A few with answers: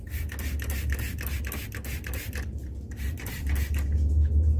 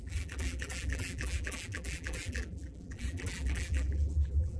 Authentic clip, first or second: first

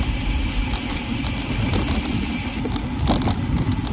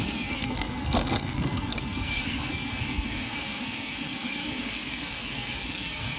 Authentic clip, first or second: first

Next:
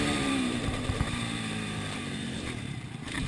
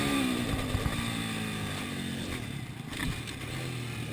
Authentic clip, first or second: second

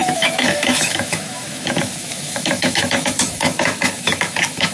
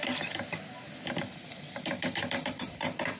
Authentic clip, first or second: second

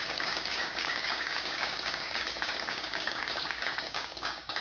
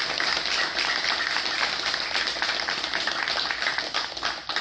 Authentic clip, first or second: second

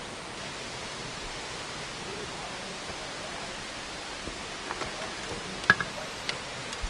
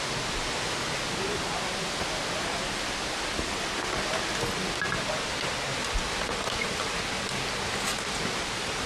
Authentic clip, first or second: second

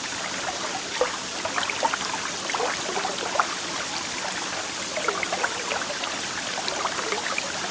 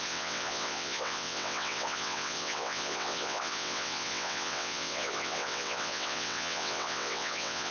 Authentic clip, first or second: first